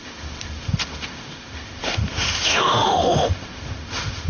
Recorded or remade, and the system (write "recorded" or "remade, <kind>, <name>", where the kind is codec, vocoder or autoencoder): remade, autoencoder, DAC-VAE